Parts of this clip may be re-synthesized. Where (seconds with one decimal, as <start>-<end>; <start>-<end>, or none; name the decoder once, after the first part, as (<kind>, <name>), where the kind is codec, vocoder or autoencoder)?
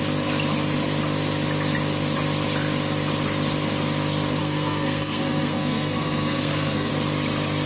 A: 4.4-6.9 (codec, SNAC)